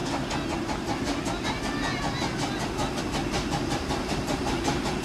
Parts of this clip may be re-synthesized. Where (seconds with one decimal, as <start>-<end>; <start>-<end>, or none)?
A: none

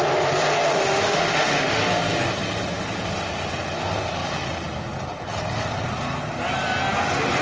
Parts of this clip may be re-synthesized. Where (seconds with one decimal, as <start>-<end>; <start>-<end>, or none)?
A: 0.7-1.8